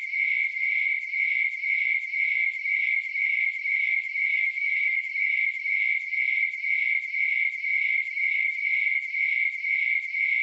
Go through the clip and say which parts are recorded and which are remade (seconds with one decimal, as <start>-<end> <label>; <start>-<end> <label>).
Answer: 0.0-2.4 recorded; 2.4-5.8 remade; 5.8-7.7 recorded; 7.7-8.5 remade; 8.5-10.4 recorded